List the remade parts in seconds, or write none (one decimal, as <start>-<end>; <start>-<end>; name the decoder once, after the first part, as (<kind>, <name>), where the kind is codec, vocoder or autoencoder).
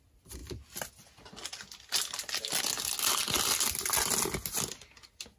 none